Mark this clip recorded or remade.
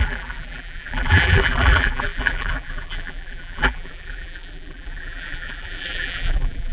remade